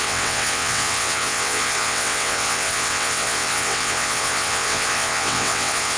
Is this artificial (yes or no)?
yes